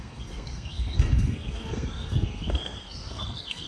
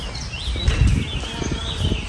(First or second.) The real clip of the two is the second